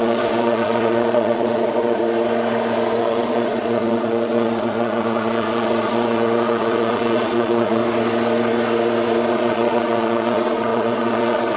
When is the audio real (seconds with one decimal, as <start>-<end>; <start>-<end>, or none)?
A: 2.0-3.0; 7.8-9.3